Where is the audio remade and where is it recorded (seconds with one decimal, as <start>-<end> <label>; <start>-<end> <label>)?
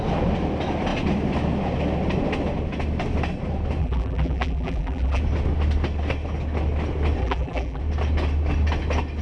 0.0-3.8 recorded; 3.8-5.2 remade; 5.2-7.2 recorded; 7.2-7.8 remade; 7.8-9.2 recorded